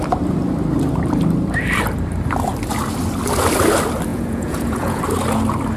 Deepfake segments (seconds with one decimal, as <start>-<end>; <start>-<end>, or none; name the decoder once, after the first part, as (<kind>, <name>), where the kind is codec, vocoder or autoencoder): 4.1-5.0 (vocoder, Vocos)